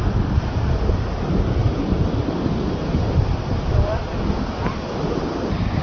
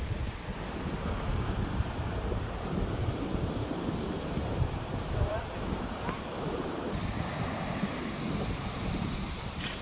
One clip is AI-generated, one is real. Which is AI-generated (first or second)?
second